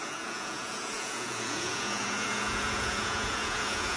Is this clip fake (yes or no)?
yes